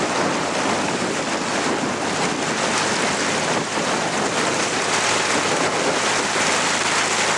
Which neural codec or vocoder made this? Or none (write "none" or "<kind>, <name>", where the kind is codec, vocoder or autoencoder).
none